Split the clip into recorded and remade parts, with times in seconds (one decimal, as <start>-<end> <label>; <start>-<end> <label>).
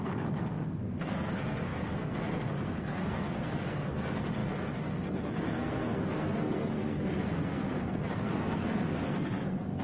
0.0-9.8 remade